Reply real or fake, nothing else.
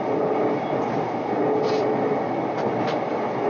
real